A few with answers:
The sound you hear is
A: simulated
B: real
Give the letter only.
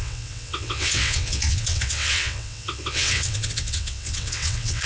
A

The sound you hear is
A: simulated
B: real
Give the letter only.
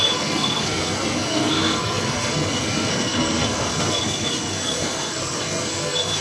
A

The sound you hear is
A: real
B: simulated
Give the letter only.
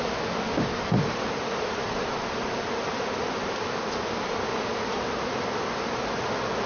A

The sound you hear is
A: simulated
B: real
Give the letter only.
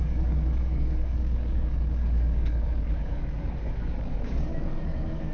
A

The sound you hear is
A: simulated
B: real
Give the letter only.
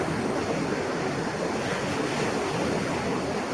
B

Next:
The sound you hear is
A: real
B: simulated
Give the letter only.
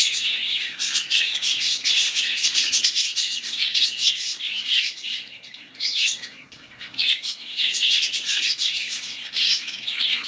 B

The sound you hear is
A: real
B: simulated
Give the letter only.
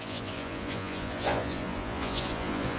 B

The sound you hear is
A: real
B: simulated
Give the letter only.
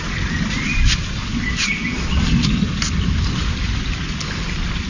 A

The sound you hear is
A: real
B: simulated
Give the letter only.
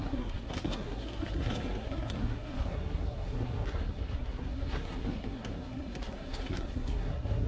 B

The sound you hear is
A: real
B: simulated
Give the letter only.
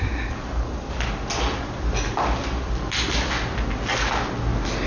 A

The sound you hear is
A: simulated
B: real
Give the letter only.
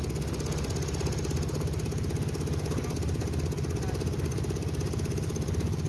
B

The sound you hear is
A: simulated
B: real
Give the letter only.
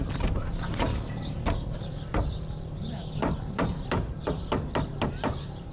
B